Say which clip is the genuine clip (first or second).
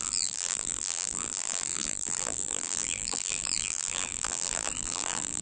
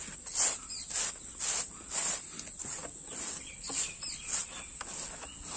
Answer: second